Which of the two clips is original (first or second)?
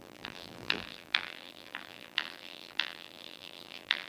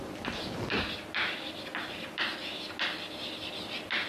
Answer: second